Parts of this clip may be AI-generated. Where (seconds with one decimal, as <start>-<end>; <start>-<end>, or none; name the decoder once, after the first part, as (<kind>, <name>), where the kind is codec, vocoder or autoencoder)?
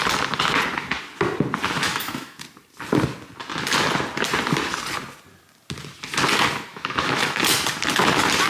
1.8-2.4 (autoencoder, DAC-VAE); 6.7-7.4